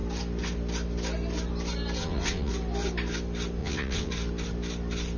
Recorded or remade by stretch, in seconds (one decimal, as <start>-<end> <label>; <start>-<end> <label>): 0.0-2.0 recorded; 2.0-2.5 remade; 2.5-3.6 recorded; 3.6-4.1 remade; 4.1-5.2 recorded